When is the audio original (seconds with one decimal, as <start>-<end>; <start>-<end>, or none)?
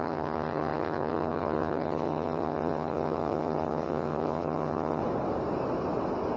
5.0-6.4